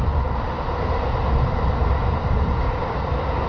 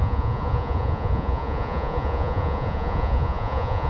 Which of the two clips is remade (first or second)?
second